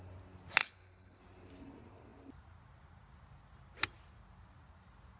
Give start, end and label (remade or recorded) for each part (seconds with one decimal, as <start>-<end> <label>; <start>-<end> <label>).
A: 0.0-0.6 recorded; 0.6-1.2 remade; 1.2-5.2 recorded